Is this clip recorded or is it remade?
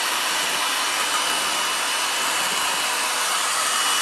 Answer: recorded